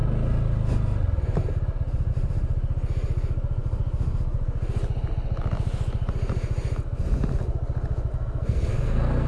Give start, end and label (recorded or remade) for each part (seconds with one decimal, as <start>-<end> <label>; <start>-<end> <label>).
0.0-8.1 recorded; 8.1-9.3 remade